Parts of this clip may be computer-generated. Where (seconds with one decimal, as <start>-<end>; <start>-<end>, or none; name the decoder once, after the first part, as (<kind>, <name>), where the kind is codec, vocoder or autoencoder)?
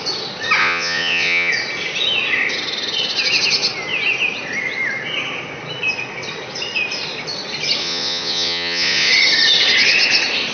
0.6-1.5 (vocoder, Vocos); 7.8-9.1